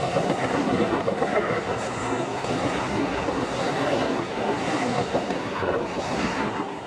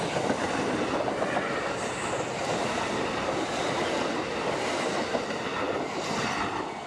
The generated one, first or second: first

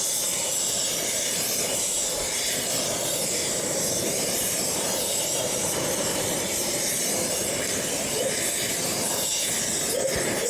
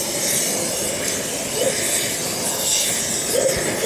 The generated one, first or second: first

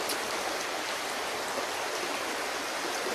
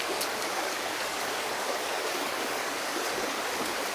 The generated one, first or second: second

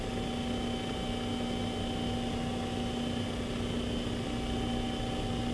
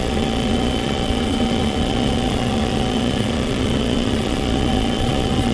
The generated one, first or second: second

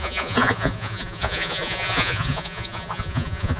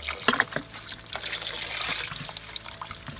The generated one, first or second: first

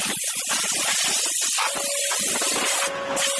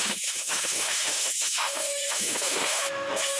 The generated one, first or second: second